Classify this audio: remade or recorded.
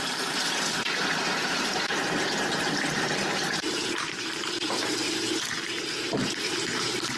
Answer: remade